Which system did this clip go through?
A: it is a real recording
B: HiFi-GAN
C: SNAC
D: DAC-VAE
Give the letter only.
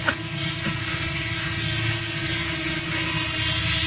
A